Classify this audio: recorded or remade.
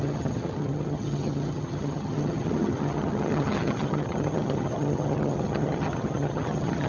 remade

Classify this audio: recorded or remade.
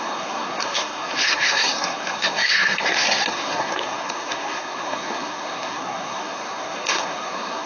remade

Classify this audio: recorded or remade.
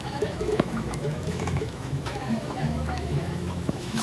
remade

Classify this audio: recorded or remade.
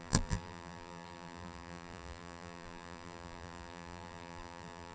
remade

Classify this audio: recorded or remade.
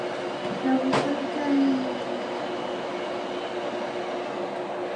recorded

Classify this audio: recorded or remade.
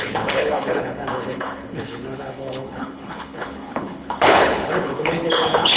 remade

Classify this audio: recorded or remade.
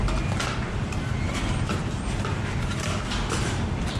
recorded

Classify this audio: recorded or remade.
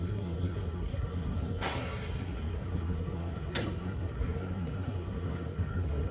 remade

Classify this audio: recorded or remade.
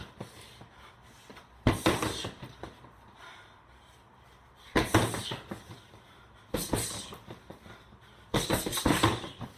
recorded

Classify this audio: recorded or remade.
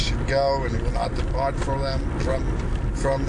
recorded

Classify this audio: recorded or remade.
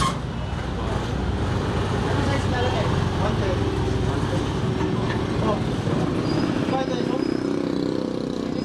recorded